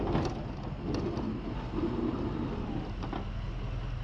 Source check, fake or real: real